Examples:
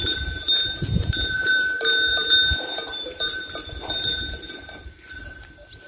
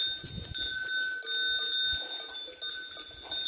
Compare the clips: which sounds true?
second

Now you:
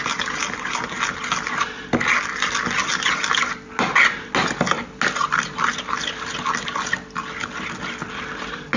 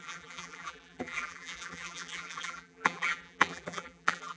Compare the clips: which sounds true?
first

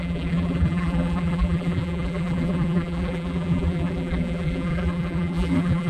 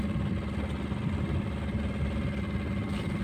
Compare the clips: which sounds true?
second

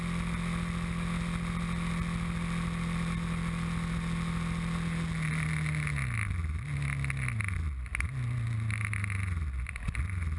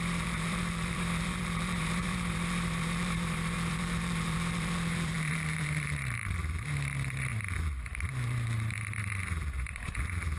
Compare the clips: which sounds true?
first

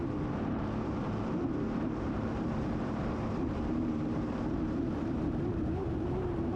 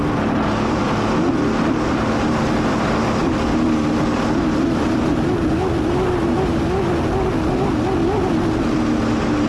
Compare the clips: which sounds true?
second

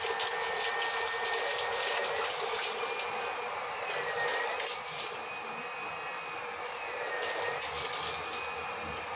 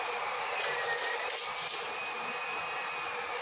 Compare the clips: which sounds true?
first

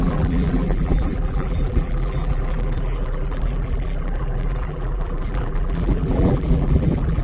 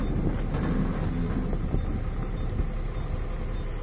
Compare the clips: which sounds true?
second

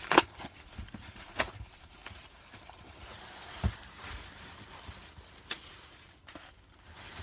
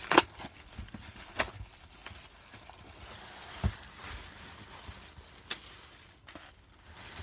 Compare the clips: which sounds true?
second